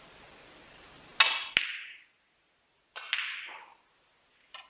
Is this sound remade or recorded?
recorded